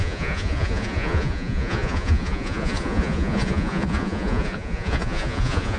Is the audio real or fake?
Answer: fake